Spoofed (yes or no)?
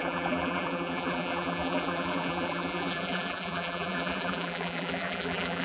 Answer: yes